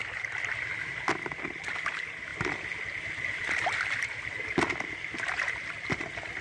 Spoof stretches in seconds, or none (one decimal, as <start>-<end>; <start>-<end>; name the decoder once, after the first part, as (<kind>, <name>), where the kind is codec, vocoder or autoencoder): 2.3-6.4 (vocoder, BigVGAN v2)